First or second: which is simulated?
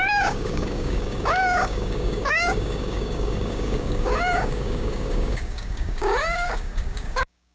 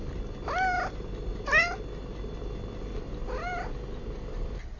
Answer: first